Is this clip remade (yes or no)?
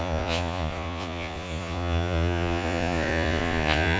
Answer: yes